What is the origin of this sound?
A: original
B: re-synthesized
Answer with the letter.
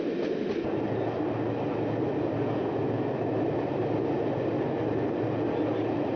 A